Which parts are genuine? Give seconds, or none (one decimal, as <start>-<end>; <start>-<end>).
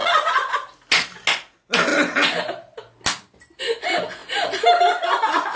0.5-5.6